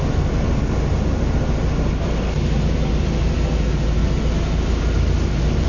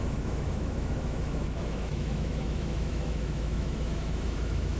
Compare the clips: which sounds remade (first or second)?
second